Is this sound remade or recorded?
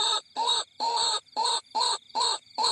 remade